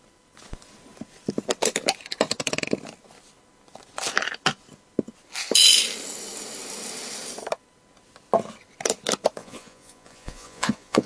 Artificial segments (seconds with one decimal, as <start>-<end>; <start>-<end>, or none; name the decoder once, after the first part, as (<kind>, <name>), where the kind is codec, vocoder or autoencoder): 9.4-11.1 (vocoder, Vocos)